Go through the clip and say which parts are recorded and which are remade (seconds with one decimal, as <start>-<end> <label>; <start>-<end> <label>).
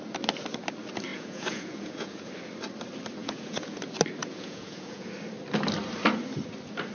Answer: 0.0-1.1 recorded; 1.1-2.3 remade; 2.3-3.2 recorded; 3.2-3.8 remade; 3.8-4.2 recorded; 4.2-5.1 remade; 5.1-6.9 recorded